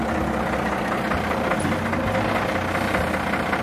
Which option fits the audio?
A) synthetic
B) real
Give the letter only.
B